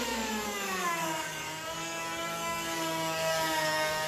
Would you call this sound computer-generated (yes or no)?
yes